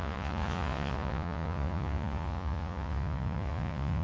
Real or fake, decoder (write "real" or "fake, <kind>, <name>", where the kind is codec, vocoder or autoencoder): fake, vocoder, Vocos